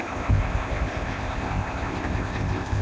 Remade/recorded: remade